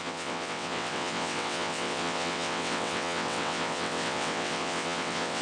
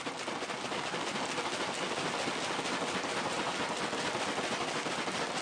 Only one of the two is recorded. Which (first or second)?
second